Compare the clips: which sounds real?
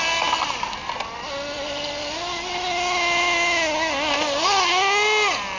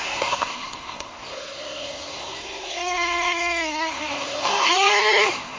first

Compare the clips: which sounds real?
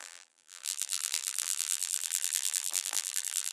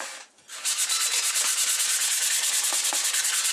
second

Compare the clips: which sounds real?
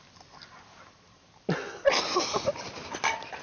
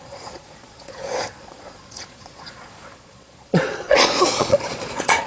first